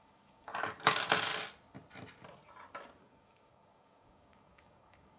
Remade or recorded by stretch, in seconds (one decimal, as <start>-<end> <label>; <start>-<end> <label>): 0.0-0.5 remade; 0.5-3.0 recorded; 3.0-5.2 remade